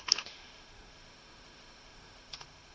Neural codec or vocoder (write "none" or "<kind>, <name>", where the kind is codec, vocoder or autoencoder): autoencoder, DAC-VAE